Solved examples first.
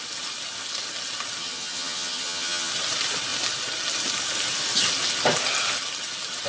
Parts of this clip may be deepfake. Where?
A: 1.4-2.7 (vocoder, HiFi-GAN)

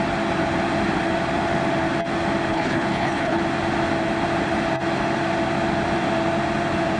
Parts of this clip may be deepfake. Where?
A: 2.5-3.4 (codec, HILCodec)

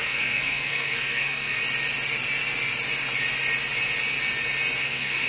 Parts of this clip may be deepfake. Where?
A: 0.0-1.6 (codec, SNAC); 4.8-5.3

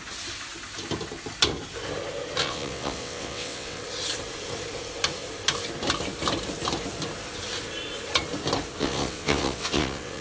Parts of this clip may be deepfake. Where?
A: 2.4-3.8 (vocoder, WaveNeXt); 8.8-10.2

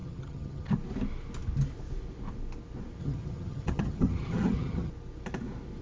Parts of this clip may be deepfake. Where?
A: 0.0-0.7 (vocoder, HiFi-GAN); 3.0-4.9

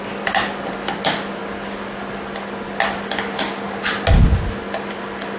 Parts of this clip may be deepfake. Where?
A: none

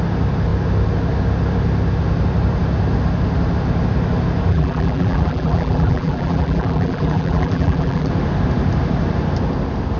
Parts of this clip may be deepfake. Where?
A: 4.5-8.1 (vocoder, BigVGAN v2)

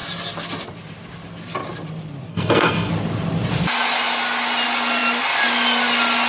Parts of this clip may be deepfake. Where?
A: 2.3-2.9 (codec, SNAC)